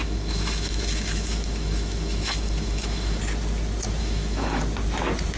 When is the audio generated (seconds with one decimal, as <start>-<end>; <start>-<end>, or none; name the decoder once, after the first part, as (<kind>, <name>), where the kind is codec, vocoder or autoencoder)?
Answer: 0.0-3.2 (autoencoder, DAC-VAE); 4.0-4.6